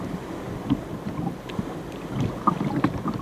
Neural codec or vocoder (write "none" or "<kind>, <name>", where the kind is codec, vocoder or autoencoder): vocoder, BigVGAN v2